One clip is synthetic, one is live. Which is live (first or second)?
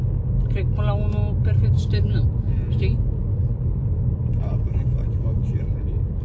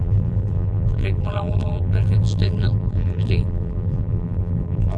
first